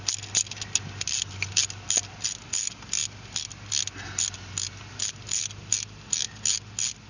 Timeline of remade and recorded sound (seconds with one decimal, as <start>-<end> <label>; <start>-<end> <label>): 0.0-7.1 recorded